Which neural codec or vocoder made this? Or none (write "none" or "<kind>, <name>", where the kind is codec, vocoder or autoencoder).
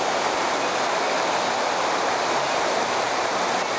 none